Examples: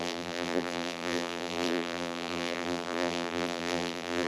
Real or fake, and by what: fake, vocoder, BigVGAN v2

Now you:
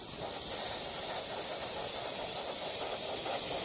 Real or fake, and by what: real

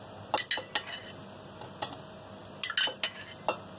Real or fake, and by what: real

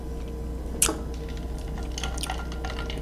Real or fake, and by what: real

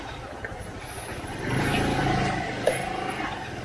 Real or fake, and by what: fake, vocoder, BigVGAN v2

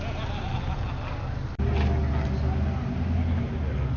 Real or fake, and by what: real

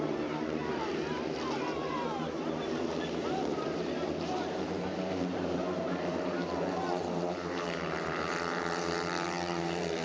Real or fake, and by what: fake, vocoder, BigVGAN v2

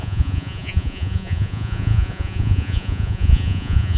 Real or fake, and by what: fake, vocoder, Vocos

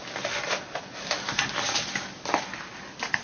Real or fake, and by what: real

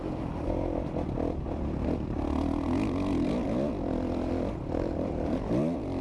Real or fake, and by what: real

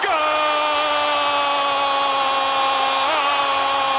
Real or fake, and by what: real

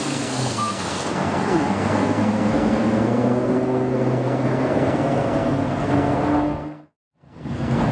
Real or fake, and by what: fake, codec, SNAC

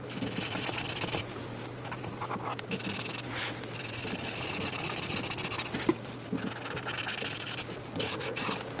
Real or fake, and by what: real